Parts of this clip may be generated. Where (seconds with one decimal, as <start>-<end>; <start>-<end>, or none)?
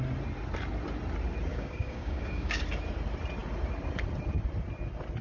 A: 1.5-2.6